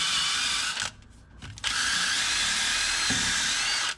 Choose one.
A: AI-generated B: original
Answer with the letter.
B